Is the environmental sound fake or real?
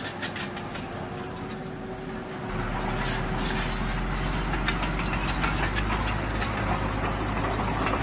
real